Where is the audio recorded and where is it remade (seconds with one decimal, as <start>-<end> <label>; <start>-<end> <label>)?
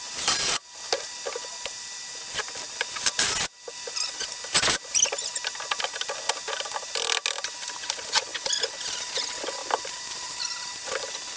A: 0.0-11.4 recorded